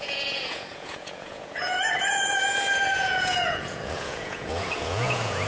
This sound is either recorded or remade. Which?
remade